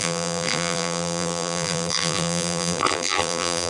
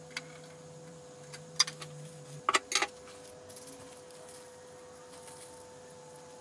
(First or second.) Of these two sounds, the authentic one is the second